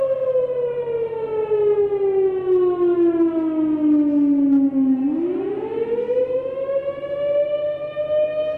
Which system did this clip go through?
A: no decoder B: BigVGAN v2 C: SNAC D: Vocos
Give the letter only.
A